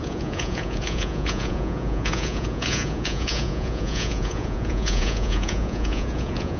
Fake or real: fake